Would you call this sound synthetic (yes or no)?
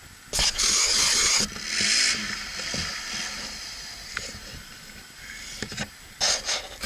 no